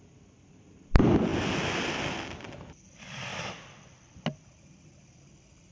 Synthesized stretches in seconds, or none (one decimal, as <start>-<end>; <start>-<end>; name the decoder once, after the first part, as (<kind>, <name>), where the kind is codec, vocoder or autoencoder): none